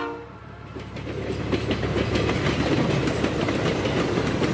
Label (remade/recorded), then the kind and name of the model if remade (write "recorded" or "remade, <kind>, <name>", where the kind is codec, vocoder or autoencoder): recorded